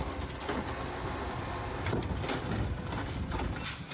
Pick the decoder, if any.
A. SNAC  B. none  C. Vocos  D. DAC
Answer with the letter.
B